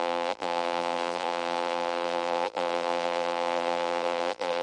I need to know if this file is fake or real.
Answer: fake